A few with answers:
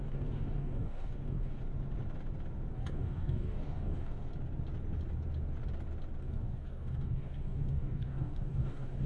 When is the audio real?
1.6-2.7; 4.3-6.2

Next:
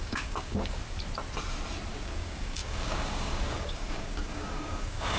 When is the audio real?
0.8-1.9

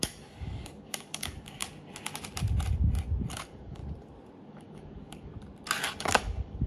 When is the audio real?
1.6-3.3; 3.8-4.5; 5.3-6.0

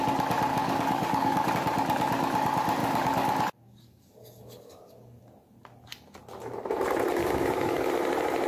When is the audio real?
0.0-0.5; 1.5-2.8; 5.2-7.2; 7.9-8.5

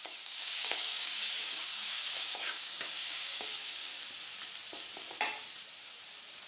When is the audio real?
3.9-6.5

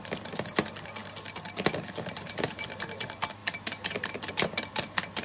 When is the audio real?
0.0-5.2